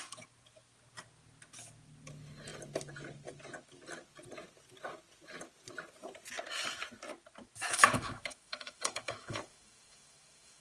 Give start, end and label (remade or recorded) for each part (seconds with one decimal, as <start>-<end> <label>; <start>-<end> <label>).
0.0-7.6 recorded; 7.6-10.6 remade

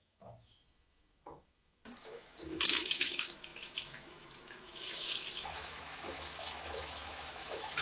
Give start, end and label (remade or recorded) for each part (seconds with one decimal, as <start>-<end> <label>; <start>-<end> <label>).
0.0-7.8 remade

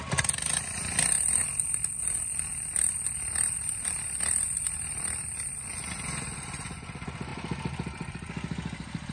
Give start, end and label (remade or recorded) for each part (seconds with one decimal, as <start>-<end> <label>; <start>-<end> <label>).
0.0-9.1 recorded

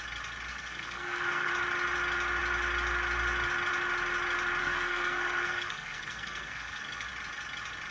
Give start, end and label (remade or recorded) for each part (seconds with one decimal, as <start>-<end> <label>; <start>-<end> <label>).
0.0-0.5 recorded; 0.5-1.5 remade; 1.5-4.6 recorded; 4.6-7.1 remade; 7.1-7.9 recorded

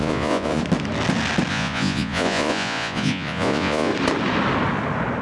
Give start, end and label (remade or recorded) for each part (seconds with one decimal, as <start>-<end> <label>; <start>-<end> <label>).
0.0-0.6 remade; 0.6-1.5 recorded; 1.5-3.9 remade; 3.9-5.2 recorded